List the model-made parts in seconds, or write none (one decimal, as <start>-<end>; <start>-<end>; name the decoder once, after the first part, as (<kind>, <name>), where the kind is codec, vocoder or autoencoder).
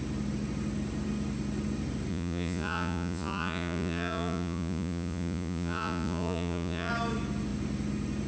2.1-6.9 (vocoder, Vocos)